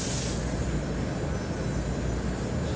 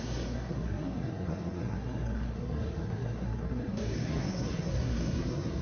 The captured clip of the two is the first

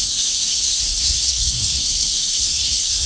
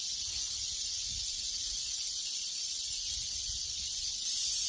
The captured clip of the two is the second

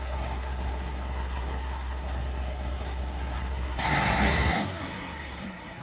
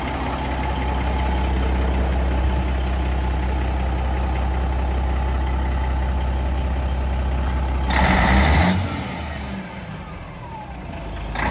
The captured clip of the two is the second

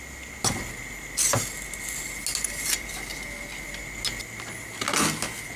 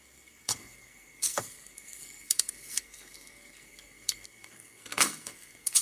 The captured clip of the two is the first